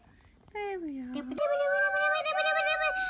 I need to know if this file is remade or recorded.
recorded